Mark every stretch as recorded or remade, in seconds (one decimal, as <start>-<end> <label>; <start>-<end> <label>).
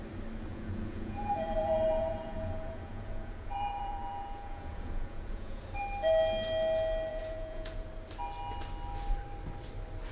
0.0-0.5 recorded; 0.5-5.6 remade; 5.6-7.1 recorded; 7.1-7.9 remade; 7.9-10.1 recorded